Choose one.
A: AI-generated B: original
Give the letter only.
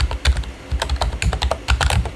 B